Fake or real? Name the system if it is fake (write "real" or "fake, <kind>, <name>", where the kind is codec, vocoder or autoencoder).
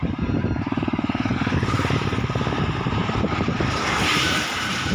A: fake, vocoder, BigVGAN v2